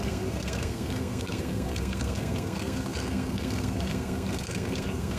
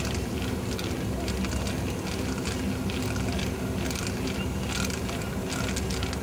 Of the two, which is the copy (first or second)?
first